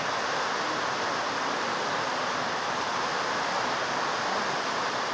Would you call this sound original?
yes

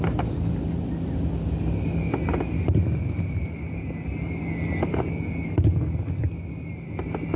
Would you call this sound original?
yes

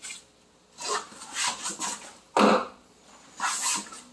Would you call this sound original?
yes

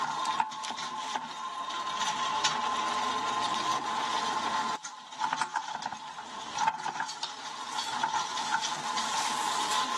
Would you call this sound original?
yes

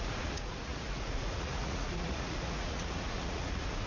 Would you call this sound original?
no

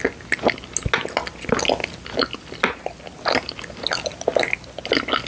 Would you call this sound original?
yes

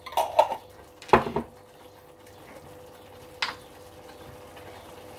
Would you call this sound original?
yes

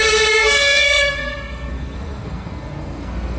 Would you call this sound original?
no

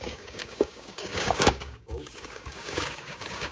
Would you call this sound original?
no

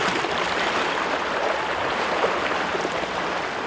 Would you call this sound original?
yes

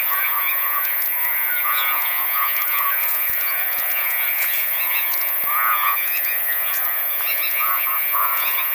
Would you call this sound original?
no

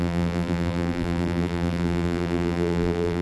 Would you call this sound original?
no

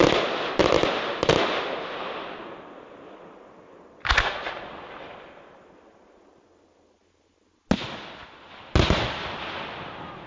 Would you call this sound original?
yes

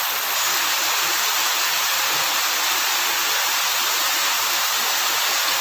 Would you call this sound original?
yes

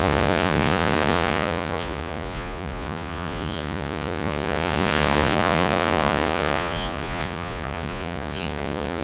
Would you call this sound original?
no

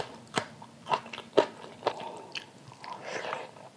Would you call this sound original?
yes